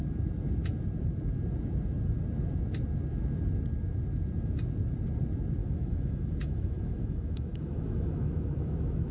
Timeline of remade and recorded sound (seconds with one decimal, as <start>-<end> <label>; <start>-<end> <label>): 0.0-5.6 recorded; 5.6-9.1 remade